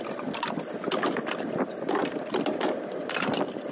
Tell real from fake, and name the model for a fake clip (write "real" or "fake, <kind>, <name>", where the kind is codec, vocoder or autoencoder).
real